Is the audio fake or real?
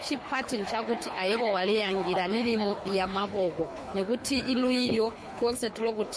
fake